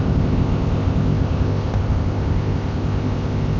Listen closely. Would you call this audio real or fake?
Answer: fake